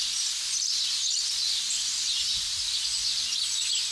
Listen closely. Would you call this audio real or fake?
real